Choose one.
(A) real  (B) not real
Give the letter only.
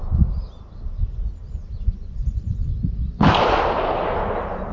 A